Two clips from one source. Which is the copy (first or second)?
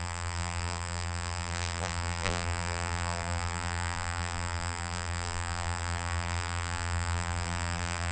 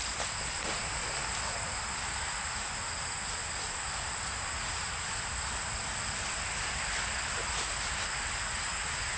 first